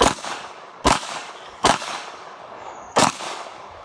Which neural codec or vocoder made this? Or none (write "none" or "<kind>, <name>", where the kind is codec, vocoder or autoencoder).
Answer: codec, DAC